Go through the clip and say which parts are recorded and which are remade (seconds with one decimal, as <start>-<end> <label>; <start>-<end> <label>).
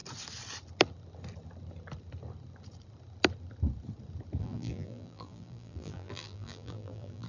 0.0-4.4 recorded; 4.4-7.3 remade